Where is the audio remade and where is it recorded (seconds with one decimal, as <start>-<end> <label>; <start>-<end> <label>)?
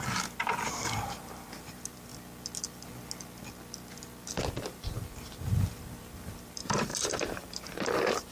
0.0-2.1 remade; 2.1-4.6 recorded; 4.6-8.3 remade